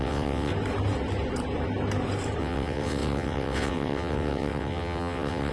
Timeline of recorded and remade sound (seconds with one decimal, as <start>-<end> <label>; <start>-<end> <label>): 0.0-0.5 remade; 0.5-2.4 recorded; 2.4-5.5 remade